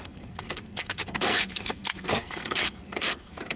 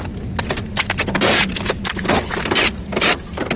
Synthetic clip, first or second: first